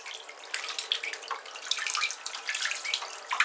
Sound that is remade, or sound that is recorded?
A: recorded